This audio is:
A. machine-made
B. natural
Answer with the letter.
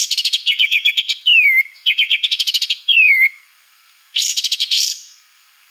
A